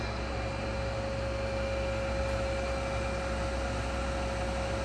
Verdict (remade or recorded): recorded